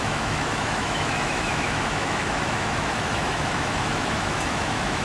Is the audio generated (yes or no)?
yes